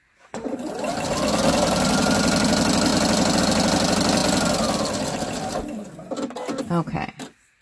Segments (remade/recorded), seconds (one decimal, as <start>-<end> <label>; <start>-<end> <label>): 0.0-7.6 recorded